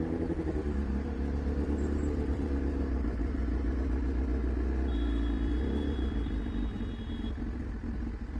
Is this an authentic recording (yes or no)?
no